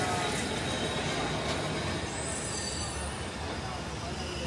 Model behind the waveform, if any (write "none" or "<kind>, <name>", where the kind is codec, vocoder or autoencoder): none